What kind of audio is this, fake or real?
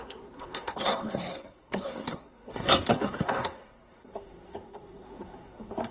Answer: fake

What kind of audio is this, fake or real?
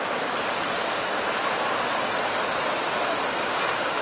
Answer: real